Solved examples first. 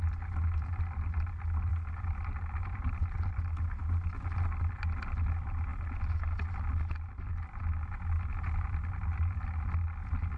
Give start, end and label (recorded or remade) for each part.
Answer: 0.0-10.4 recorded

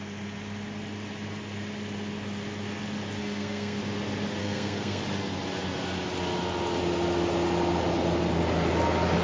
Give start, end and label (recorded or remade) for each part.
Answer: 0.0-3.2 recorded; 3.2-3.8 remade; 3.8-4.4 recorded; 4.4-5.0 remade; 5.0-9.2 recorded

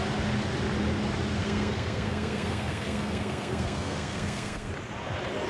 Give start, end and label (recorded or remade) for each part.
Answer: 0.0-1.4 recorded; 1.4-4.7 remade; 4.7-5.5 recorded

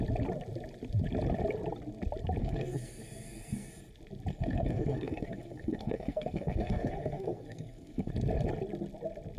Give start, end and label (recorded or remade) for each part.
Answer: 0.0-2.4 recorded; 2.4-3.7 remade; 3.7-4.3 recorded; 4.3-8.1 remade; 8.1-9.4 recorded

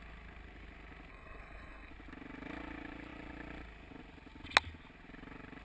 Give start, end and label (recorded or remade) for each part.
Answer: 0.0-1.1 recorded; 1.1-1.9 remade; 1.9-5.6 recorded

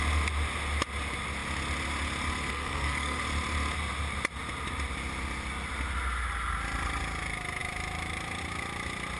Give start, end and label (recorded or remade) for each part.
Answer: 0.0-2.5 recorded; 2.5-3.2 remade; 3.2-9.2 recorded